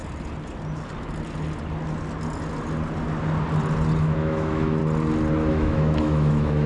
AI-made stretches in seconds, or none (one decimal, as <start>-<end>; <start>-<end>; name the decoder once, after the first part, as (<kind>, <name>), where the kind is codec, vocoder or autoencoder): 4.0-4.8 (autoencoder, DAC-VAE); 5.5-6.7